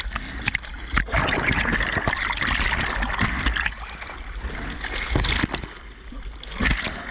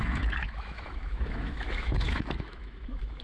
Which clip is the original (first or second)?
first